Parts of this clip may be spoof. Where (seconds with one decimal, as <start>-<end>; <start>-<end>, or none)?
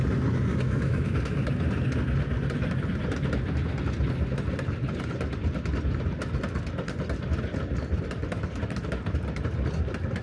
0.5-1.1